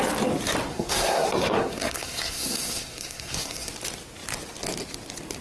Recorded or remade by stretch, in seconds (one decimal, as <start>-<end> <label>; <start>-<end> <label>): 0.0-0.7 recorded; 0.7-3.7 remade; 3.7-5.4 recorded